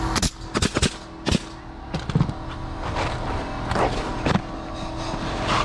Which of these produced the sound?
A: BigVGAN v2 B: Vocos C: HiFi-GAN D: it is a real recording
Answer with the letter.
D